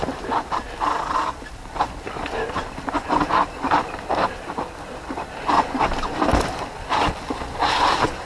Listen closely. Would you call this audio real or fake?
real